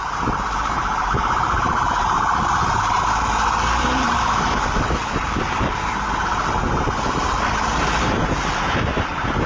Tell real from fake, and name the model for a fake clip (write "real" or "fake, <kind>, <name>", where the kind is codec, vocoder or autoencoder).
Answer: fake, vocoder, BigVGAN v2